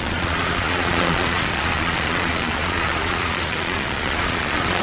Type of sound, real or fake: fake